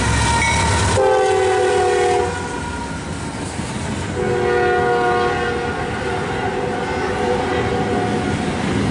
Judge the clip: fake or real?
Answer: real